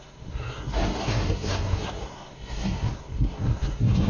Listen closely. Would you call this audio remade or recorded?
remade